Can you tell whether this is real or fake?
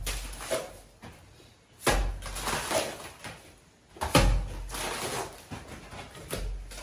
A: real